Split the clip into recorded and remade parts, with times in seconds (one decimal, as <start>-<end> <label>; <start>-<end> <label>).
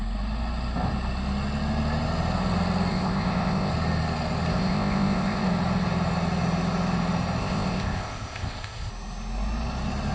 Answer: 0.0-2.9 recorded; 2.9-3.7 remade; 3.7-4.5 recorded; 4.5-5.5 remade; 5.5-7.4 recorded; 7.4-8.9 remade; 8.9-10.1 recorded